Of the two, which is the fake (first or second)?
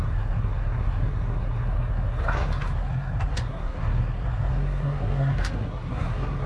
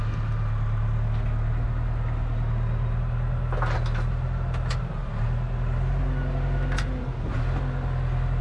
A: first